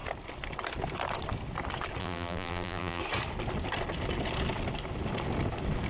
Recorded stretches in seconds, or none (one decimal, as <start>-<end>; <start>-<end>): 0.0-2.0; 3.0-5.9